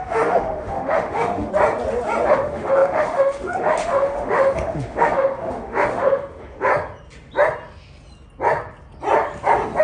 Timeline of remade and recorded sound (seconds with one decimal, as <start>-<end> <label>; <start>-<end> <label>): 0.0-1.5 remade; 1.5-2.3 recorded; 2.3-6.7 remade; 6.7-9.8 recorded